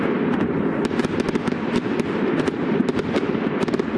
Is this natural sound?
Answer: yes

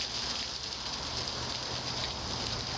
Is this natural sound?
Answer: yes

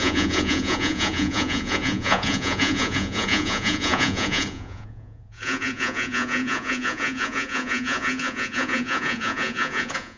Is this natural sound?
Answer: no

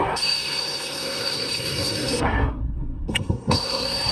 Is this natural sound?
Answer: no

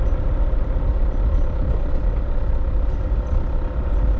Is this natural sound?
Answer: yes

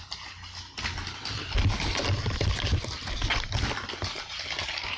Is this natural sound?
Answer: yes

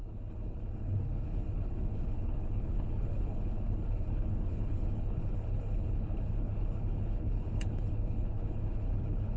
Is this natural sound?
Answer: no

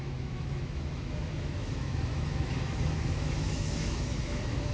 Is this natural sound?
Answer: no